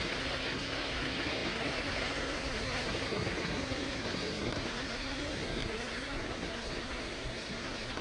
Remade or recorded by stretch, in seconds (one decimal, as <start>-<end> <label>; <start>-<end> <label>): 0.0-8.0 remade